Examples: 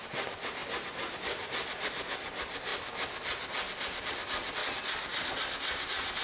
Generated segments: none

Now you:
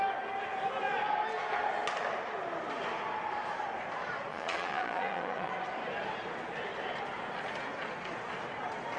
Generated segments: 4.3-5.5 (vocoder, Vocos)

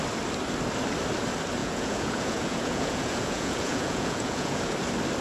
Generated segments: 1.6-4.7 (vocoder, Vocos)

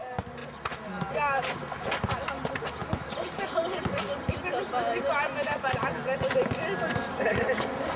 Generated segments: none

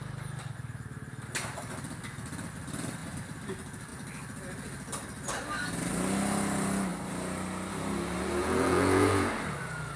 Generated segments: 8.4-9.3 (vocoder, Vocos)